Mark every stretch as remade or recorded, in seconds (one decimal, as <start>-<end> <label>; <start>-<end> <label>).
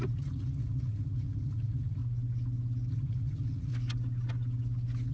0.0-2.0 remade; 2.0-2.9 recorded; 2.9-3.7 remade; 3.7-5.1 recorded